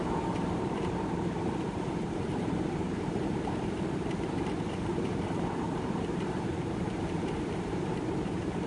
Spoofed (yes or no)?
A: yes